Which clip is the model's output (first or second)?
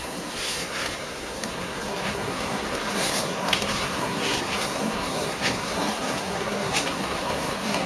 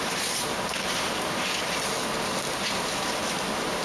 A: first